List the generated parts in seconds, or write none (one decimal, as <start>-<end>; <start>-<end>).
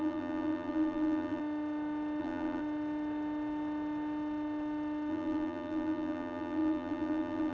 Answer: 0.0-1.4; 2.2-2.6; 5.1-7.5